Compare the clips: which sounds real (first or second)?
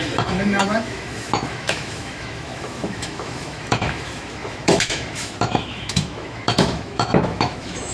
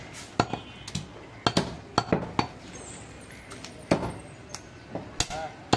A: second